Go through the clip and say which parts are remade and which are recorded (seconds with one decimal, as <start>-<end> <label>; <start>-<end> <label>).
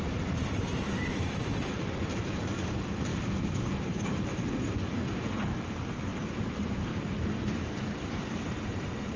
0.0-3.1 remade; 3.1-3.7 recorded; 3.7-4.3 remade; 4.3-4.9 recorded; 4.9-9.2 remade